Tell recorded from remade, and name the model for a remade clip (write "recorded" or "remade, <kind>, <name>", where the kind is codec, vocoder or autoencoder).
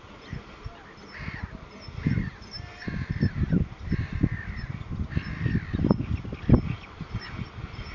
recorded